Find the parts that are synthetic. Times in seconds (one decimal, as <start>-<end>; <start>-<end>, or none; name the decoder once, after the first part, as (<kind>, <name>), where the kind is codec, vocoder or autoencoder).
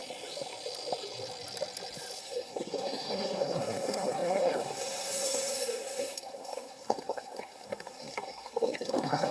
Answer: 2.2-9.3 (codec, SNAC)